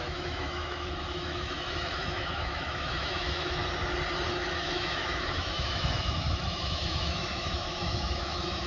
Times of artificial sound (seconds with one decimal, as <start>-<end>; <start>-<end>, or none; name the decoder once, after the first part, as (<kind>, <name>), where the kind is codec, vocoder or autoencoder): 0.0-3.6 (autoencoder, DAC-VAE); 4.3-8.7